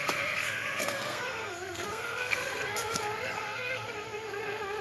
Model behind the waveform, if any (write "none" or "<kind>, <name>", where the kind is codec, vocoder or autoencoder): codec, SNAC